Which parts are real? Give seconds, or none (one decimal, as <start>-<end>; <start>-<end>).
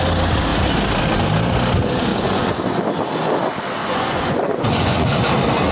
0.0-2.1; 2.8-3.8; 5.2-5.7